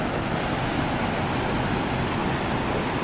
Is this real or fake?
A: real